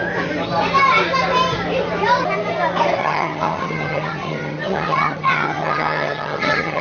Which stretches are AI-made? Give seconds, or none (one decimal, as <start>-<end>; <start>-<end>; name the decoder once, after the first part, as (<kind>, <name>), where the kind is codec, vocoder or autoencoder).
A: 3.0-6.8 (vocoder, HiFi-GAN)

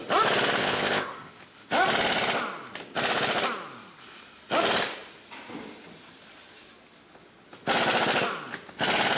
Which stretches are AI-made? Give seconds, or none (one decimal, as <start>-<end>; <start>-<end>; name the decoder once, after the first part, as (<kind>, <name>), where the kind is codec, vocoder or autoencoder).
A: 0.6-1.4 (codec, ZipCodec)

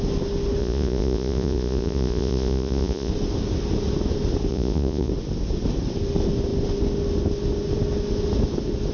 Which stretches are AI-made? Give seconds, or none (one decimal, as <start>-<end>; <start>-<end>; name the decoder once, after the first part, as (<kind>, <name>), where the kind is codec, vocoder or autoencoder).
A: 0.6-3.1 (vocoder, Vocos); 4.5-5.1